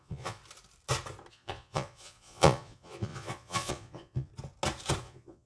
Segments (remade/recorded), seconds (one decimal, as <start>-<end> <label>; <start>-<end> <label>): 0.0-0.4 remade; 0.4-1.3 recorded; 1.3-4.3 remade; 4.3-5.0 recorded; 5.0-5.5 remade